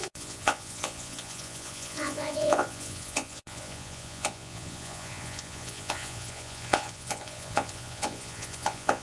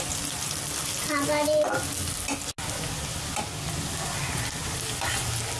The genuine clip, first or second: second